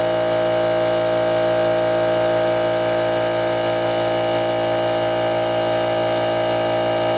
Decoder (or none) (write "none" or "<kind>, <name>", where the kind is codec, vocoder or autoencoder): none